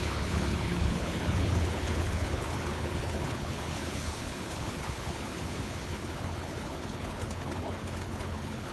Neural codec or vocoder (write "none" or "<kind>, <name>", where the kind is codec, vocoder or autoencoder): codec, HILCodec